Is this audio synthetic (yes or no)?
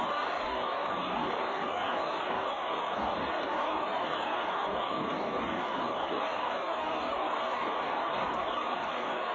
yes